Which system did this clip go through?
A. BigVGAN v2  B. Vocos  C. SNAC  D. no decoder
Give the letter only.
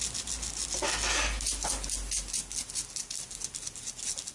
D